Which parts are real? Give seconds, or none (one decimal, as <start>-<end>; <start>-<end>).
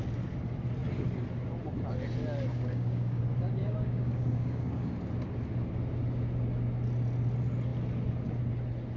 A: 0.0-2.5; 3.2-3.6; 4.9-9.0